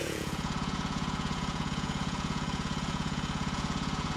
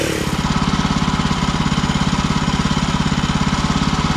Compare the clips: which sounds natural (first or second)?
second